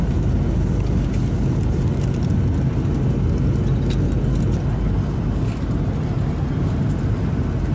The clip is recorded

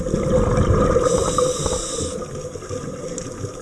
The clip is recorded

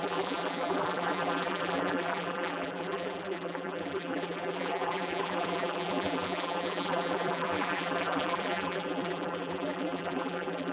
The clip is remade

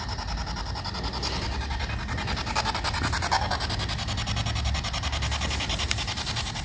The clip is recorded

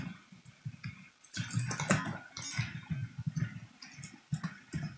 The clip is recorded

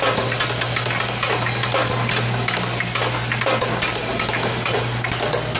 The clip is recorded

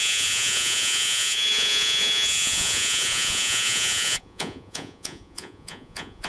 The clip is remade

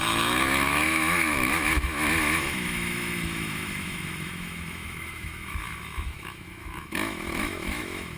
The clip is remade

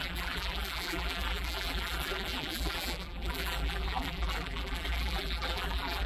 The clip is remade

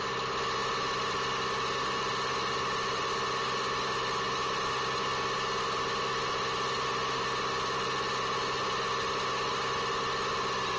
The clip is recorded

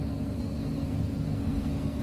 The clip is remade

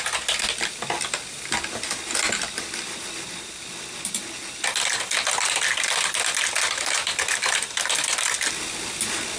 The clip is recorded